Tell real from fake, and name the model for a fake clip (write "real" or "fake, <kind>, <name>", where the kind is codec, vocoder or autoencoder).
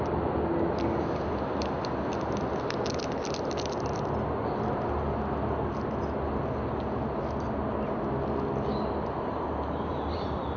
real